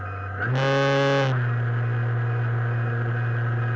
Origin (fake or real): real